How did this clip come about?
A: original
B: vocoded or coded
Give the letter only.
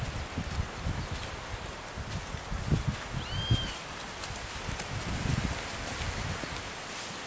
A